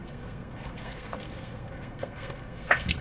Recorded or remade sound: remade